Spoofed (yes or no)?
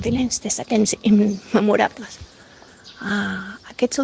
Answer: no